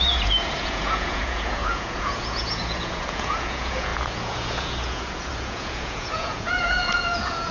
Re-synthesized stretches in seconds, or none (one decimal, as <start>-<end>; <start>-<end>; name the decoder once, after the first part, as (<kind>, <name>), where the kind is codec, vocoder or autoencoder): 0.0-7.5 (vocoder, Vocos)